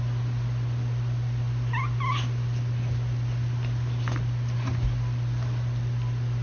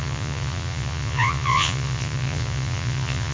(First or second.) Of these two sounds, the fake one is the second